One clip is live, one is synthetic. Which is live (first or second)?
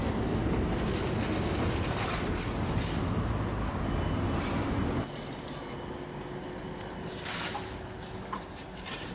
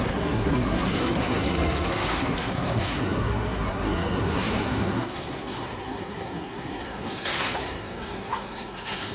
first